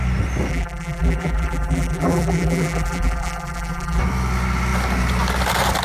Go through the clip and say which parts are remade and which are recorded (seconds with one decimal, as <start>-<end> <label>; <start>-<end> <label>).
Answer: 0.0-0.5 recorded; 0.5-4.0 remade; 4.0-5.8 recorded